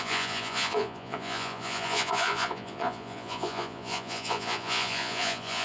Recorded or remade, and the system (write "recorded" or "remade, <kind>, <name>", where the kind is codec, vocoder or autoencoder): remade, vocoder, Vocos